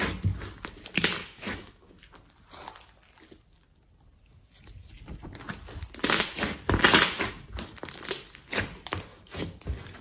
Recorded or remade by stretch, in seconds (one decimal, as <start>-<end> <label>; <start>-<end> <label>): 0.0-1.2 recorded; 1.2-1.9 remade; 1.9-9.1 recorded; 9.1-9.6 remade; 9.6-10.0 recorded